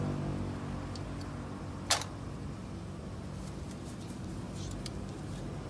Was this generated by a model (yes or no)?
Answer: no